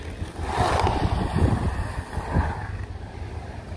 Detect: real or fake real